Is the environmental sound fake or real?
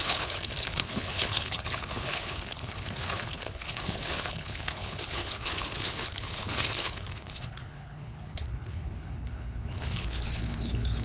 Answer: fake